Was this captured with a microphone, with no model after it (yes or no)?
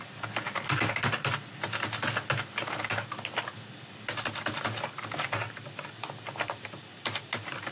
yes